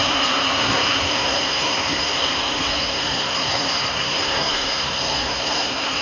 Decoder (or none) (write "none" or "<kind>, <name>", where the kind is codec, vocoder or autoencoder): codec, SNAC